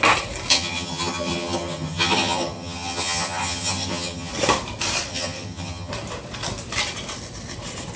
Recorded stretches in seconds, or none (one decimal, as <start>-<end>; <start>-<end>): 0.0-0.5; 4.3-5.1; 5.9-8.0